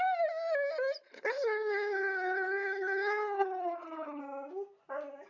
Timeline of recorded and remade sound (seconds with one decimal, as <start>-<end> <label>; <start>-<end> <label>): 0.0-1.0 recorded; 1.0-4.2 remade; 4.2-5.3 recorded